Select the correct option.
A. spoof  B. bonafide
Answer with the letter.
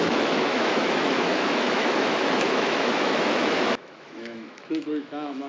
A